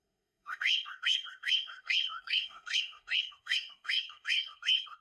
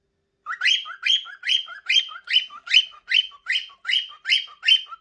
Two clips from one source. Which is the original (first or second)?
second